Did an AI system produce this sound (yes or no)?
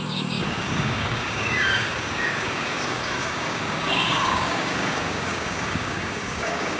yes